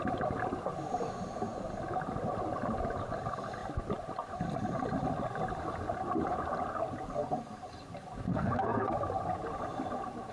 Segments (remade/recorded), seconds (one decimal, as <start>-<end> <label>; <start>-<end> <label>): 0.0-8.3 recorded; 8.3-8.9 remade; 8.9-10.3 recorded